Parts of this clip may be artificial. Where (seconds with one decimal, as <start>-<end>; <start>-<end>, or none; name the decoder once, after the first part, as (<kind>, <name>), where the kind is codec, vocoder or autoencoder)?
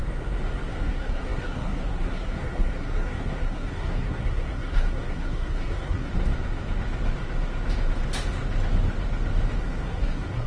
0.7-6.1 (codec, SNAC); 9.6-10.5